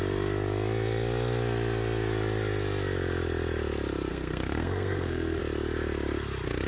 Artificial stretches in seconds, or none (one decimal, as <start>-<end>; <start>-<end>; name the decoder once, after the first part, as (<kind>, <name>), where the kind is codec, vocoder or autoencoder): 4.1-5.4 (codec, SNAC)